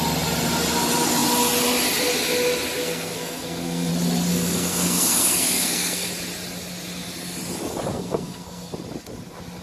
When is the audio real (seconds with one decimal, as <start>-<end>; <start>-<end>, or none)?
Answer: 0.0-2.8; 3.9-4.3; 6.1-7.9; 8.7-9.6